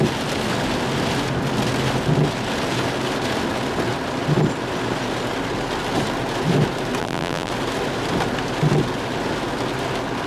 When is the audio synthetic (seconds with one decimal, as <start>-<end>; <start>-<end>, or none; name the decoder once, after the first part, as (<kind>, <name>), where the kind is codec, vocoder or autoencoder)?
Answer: 7.0-7.5 (vocoder, BigVGAN v2)